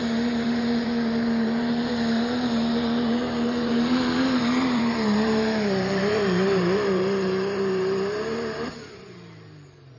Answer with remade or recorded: remade